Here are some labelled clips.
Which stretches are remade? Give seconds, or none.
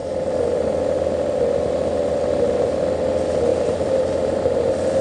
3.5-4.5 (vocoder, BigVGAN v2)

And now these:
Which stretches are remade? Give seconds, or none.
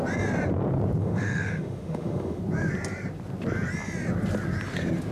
1.0-2.4 (autoencoder, DAC-VAE)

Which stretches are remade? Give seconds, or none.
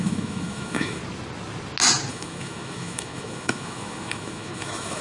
0.0-1.0 (autoencoder, DAC-VAE); 2.1-5.0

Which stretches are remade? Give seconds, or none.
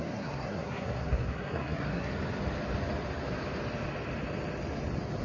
0.0-2.1 (codec, SNAC)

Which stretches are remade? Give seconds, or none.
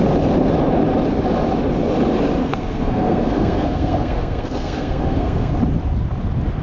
2.4-5.5 (codec, SNAC)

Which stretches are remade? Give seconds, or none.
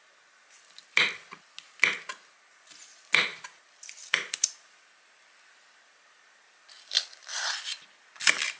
3.3-7.5 (vocoder, BigVGAN v2)